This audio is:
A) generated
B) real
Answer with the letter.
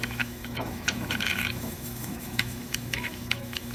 A